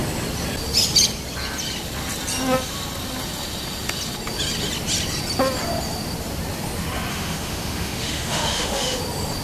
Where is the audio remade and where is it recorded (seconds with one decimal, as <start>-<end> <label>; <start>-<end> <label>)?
0.0-7.1 recorded; 7.1-9.0 remade; 9.0-9.4 recorded